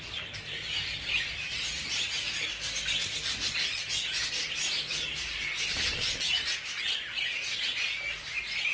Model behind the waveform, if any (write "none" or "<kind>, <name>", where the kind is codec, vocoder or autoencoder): none